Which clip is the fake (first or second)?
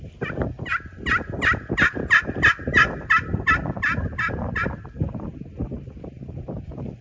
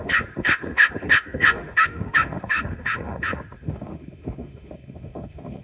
second